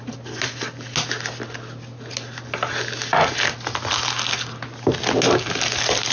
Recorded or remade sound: recorded